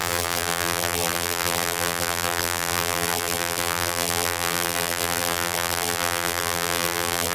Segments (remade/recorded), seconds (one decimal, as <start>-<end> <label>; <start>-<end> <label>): 0.0-7.3 remade

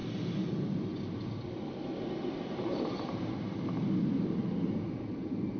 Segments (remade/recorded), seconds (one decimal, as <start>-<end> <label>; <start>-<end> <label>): 0.0-5.6 recorded